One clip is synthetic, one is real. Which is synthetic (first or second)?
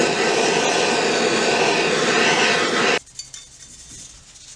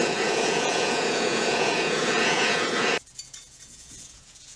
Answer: second